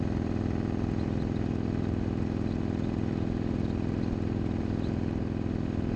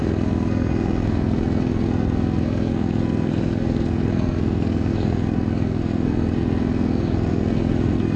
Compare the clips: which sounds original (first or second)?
first